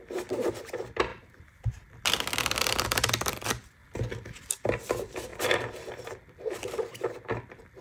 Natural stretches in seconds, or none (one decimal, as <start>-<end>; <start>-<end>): 0.0-1.1; 1.7-5.3; 6.0-7.8